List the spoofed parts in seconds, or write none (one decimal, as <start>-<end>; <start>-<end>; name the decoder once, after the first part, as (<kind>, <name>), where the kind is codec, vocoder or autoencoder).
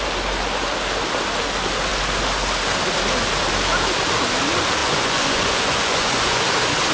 4.8-6.4 (vocoder, Vocos)